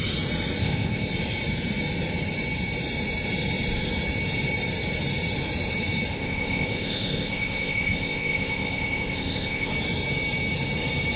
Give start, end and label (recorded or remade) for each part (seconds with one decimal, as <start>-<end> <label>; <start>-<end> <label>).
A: 0.0-0.6 recorded; 0.6-1.1 remade; 1.1-6.1 recorded; 6.1-9.7 remade; 9.7-11.2 recorded